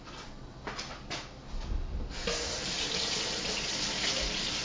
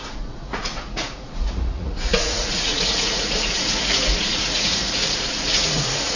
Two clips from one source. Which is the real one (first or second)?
first